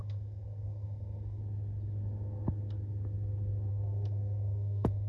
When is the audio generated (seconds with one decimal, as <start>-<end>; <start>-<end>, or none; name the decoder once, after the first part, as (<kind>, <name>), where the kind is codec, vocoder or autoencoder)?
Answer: 0.0-1.4 (codec, SNAC); 3.7-5.1